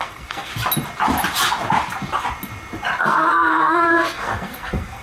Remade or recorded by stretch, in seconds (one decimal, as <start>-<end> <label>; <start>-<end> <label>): 0.0-0.5 remade; 0.5-3.0 recorded; 3.0-5.0 remade